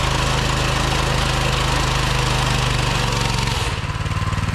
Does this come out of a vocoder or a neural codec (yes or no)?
no